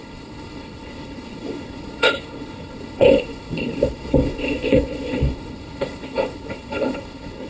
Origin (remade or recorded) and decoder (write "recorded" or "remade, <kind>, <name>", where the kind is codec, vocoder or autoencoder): remade, codec, HILCodec